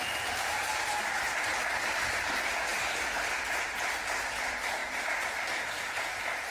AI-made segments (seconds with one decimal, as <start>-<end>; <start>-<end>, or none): 4.8-6.0